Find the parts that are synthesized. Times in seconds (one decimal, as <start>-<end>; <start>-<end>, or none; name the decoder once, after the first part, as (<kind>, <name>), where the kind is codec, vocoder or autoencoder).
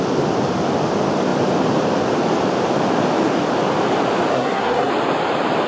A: 4.3-4.9 (codec, SNAC)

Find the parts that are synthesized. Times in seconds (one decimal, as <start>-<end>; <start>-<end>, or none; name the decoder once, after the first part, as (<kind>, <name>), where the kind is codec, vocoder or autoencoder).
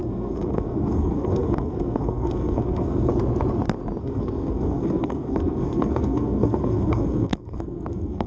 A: 0.0-3.1 (codec, SNAC); 4.0-8.3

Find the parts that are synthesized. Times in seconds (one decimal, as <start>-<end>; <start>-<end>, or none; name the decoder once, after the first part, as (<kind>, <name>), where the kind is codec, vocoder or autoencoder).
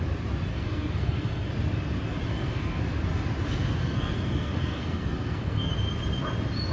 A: 0.5-1.5 (codec, SNAC); 2.3-2.8; 3.8-5.7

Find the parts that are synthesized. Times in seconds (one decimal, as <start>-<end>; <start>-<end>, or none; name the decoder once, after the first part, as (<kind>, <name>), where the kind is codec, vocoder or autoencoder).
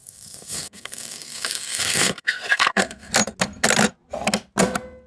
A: 0.0-3.1 (codec, SNAC)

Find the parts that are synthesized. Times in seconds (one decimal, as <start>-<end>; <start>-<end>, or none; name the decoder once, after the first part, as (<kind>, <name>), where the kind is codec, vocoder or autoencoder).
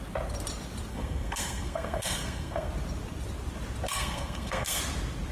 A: 0.9-2.7 (codec, SNAC); 3.9-4.8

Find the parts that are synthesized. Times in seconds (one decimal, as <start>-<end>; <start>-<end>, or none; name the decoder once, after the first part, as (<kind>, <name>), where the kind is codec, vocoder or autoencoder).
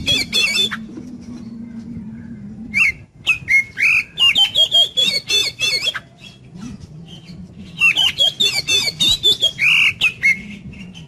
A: none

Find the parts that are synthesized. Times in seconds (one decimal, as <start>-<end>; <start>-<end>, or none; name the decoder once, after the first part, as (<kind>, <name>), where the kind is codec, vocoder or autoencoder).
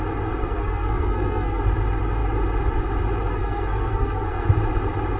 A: 0.4-1.6 (codec, SNAC); 3.3-4.5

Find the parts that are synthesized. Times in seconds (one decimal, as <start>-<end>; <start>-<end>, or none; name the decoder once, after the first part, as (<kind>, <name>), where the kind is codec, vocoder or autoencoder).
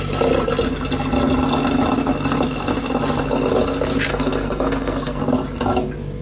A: 4.1-5.2 (codec, SNAC)